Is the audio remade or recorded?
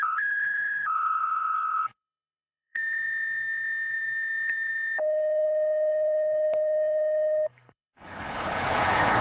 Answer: remade